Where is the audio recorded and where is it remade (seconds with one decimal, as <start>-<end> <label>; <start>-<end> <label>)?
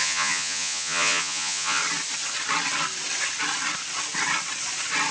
0.0-1.8 remade; 1.8-5.1 recorded